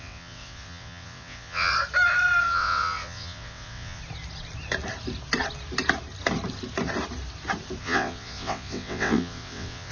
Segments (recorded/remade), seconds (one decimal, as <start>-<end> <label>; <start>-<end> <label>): 0.0-1.7 remade; 1.7-2.4 recorded; 2.4-4.0 remade; 4.0-7.8 recorded; 7.8-9.9 remade